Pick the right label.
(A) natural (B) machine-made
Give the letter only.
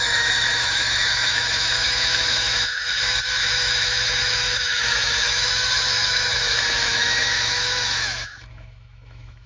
B